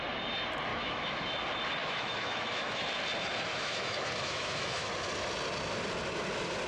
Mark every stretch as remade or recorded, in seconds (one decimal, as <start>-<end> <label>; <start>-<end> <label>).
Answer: 0.0-0.7 recorded; 0.7-1.2 remade; 1.2-1.8 recorded; 1.8-2.8 remade; 2.8-3.5 recorded; 3.5-4.9 remade; 4.9-6.7 recorded